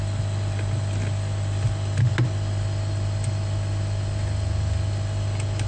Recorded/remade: recorded